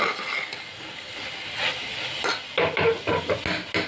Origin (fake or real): real